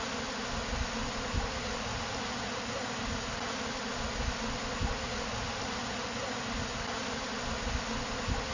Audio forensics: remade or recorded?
recorded